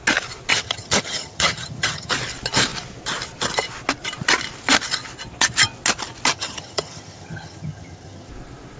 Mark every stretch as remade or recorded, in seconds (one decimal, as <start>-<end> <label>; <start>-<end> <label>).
0.0-0.5 recorded; 0.5-2.1 remade; 2.1-6.3 recorded; 6.3-8.3 remade; 8.3-8.8 recorded